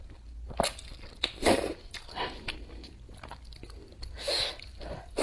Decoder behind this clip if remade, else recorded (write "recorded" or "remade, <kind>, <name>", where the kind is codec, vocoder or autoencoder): recorded